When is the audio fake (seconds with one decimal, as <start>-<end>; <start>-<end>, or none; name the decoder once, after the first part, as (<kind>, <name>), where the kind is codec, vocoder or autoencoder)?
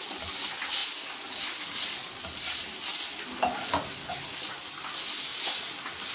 none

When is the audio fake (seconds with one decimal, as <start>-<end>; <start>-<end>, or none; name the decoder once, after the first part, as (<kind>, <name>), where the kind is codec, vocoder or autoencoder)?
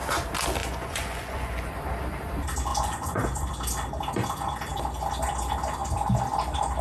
0.6-1.7 (vocoder, Vocos); 2.7-3.5